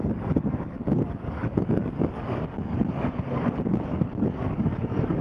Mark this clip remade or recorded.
remade